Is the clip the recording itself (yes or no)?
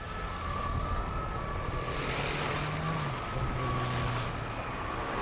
yes